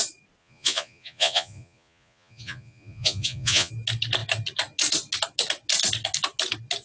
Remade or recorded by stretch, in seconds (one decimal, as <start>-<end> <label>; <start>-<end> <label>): 0.0-0.4 recorded; 0.4-3.7 remade; 3.7-6.8 recorded

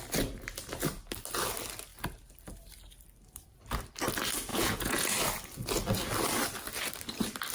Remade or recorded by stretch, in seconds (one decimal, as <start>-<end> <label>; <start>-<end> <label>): 0.0-4.5 recorded; 4.5-5.1 remade; 5.1-7.5 recorded

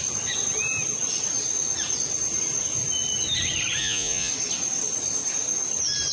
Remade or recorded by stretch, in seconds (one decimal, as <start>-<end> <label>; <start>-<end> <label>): 0.0-3.8 recorded; 3.8-4.3 remade; 4.3-6.1 recorded

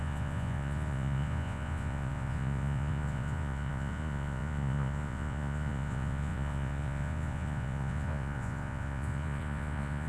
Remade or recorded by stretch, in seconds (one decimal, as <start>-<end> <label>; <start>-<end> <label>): 0.0-10.1 remade